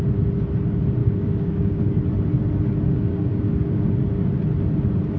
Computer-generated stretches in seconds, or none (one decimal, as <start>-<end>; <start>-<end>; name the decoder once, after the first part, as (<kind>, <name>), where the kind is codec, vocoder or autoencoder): 1.0-2.0 (codec, DAC); 3.1-3.8